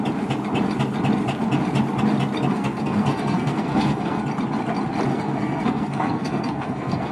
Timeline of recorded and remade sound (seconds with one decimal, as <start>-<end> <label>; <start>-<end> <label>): 0.0-2.5 recorded; 2.5-4.2 remade; 4.2-5.1 recorded; 5.1-7.1 remade